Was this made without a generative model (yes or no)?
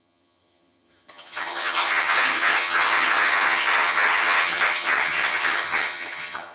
no